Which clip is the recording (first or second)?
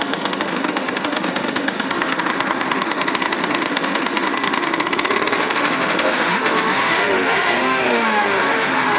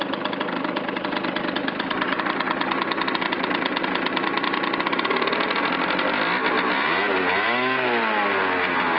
second